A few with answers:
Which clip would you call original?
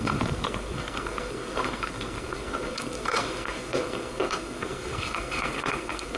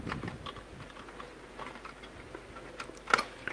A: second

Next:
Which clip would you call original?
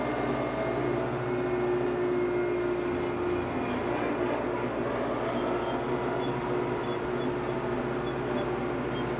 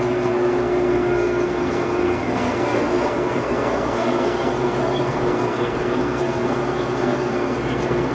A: first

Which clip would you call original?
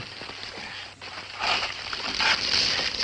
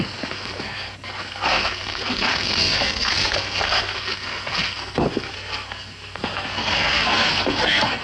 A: first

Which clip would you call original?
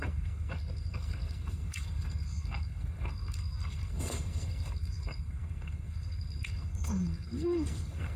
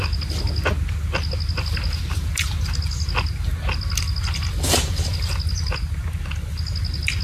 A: second